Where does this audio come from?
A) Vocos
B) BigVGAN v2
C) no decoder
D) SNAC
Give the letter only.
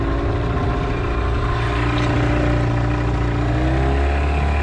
C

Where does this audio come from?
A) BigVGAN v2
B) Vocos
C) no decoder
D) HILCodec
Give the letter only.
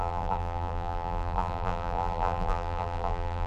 A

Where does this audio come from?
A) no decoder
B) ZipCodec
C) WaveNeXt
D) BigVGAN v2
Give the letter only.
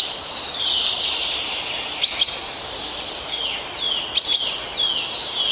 A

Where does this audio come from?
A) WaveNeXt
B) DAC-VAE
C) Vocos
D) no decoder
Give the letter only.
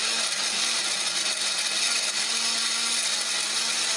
D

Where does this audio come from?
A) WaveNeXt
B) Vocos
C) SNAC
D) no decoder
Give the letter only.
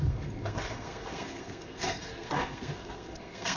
C